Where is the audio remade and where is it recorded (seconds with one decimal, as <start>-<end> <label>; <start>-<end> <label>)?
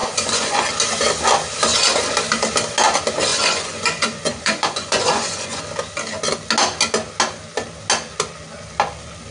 0.0-0.6 remade; 0.6-3.3 recorded; 3.3-5.6 remade; 5.6-9.3 recorded